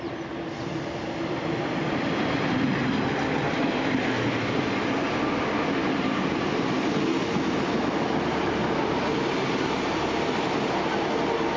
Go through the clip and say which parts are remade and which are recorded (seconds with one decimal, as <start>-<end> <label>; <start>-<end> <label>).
0.0-11.6 recorded